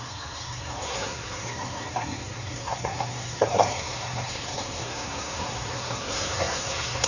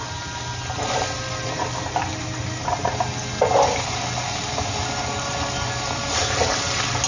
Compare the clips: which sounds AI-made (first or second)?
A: first